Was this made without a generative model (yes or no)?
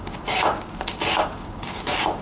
no